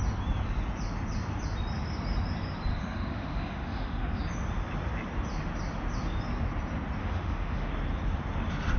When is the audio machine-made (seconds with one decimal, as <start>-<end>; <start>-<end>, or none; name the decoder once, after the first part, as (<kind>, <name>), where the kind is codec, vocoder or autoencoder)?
2.7-4.2 (autoencoder, DAC-VAE); 7.0-7.7